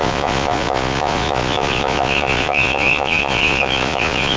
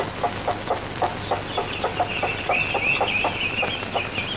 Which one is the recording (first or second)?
second